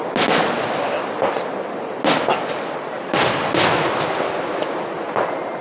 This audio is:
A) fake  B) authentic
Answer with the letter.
B